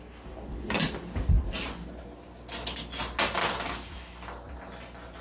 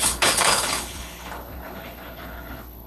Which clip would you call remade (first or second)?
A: second